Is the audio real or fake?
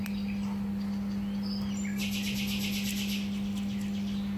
real